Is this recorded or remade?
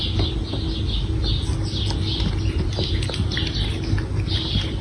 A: recorded